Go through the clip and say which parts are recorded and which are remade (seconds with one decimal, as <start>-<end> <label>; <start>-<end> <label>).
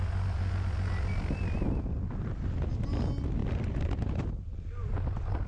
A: 0.0-3.4 recorded; 3.4-5.0 remade; 5.0-5.5 recorded